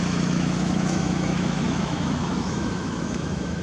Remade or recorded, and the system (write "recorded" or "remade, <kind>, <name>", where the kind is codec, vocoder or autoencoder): remade, autoencoder, DAC-VAE